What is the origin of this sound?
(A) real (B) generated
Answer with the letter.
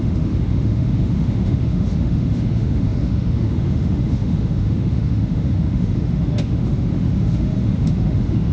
B